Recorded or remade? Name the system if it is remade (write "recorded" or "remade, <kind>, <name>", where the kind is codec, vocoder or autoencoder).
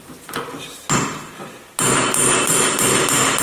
recorded